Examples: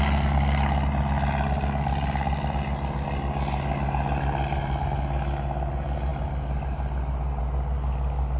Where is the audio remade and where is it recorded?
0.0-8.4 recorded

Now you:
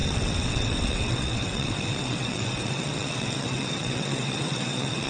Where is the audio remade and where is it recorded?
0.0-5.1 remade